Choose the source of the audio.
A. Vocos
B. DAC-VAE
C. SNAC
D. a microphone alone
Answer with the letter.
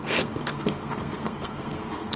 C